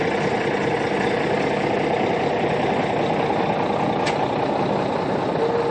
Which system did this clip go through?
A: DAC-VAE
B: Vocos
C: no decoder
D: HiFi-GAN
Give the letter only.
C